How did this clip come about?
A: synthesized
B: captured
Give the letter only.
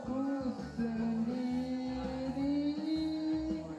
B